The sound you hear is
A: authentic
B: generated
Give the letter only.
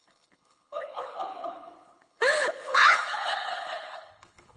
B